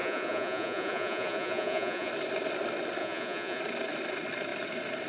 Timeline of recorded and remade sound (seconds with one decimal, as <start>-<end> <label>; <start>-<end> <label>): 0.0-2.1 remade; 2.1-3.0 recorded; 3.0-3.6 remade; 3.6-5.1 recorded

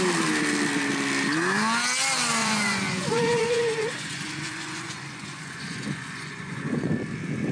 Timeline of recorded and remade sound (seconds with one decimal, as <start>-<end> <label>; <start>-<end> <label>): 0.0-2.4 recorded; 2.4-6.9 remade; 6.9-7.5 recorded

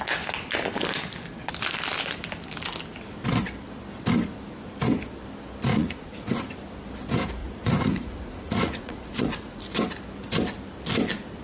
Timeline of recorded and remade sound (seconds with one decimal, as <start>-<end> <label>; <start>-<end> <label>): 0.0-5.7 recorded; 5.7-6.4 remade; 6.4-7.4 recorded; 7.4-9.6 remade; 9.6-11.4 recorded